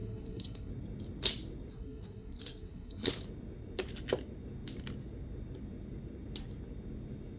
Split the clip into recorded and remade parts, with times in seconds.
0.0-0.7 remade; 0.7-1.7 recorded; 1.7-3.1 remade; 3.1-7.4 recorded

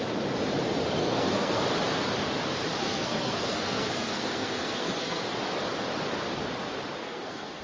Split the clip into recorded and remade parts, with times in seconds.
0.0-1.0 recorded; 1.0-1.6 remade; 1.6-2.8 recorded; 2.8-5.2 remade; 5.2-7.0 recorded; 7.0-7.6 remade

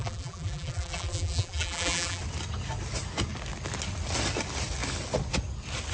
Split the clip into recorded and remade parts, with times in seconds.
0.0-2.2 remade; 2.2-5.9 recorded